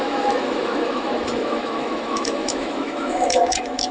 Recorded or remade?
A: remade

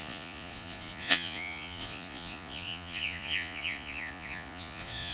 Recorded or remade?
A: remade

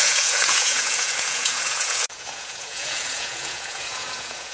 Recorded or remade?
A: remade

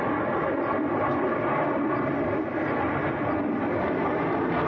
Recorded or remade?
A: recorded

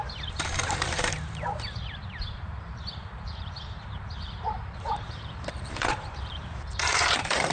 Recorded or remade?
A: remade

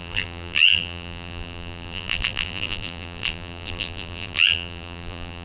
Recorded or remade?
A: remade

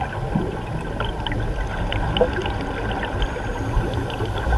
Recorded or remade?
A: recorded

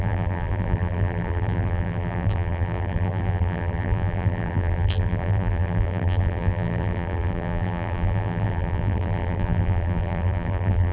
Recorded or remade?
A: remade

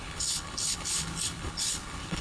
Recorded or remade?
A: remade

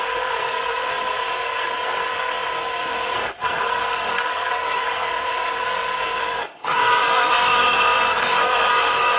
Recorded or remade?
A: remade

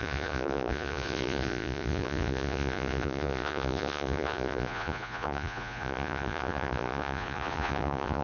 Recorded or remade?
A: remade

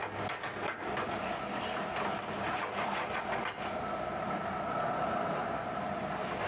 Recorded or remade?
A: recorded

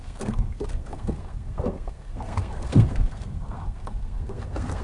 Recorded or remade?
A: remade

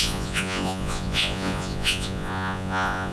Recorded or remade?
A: remade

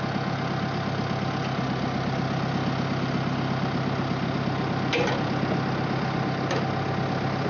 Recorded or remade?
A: recorded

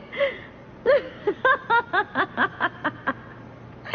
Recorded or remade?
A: recorded